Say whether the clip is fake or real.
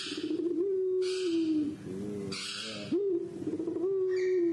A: real